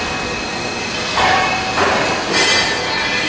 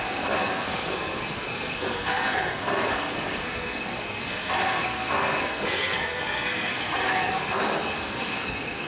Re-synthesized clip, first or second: second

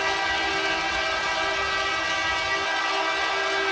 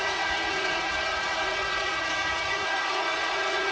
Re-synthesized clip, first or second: second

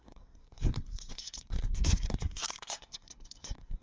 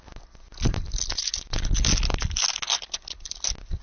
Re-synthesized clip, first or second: first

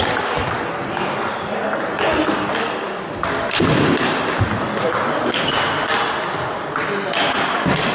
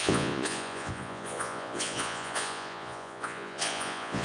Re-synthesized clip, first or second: second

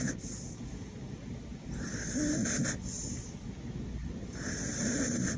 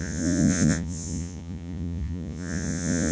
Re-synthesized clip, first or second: second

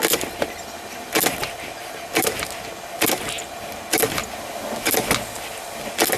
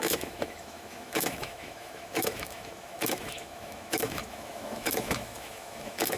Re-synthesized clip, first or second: second